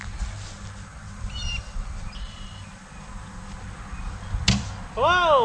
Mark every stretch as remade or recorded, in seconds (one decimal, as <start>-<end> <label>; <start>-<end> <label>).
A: 0.0-5.4 recorded